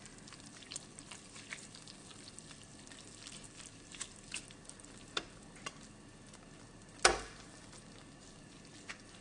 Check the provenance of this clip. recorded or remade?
recorded